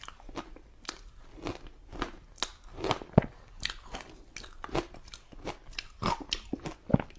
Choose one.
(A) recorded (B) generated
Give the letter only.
A